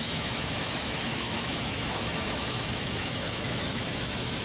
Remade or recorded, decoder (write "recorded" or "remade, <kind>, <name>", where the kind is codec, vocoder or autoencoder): remade, autoencoder, DAC-VAE